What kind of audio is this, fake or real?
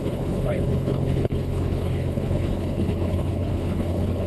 fake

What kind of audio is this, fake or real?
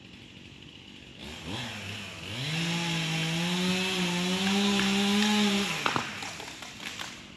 real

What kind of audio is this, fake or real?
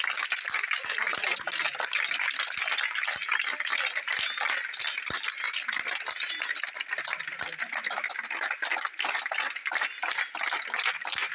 real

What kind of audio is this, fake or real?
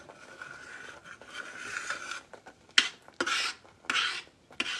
real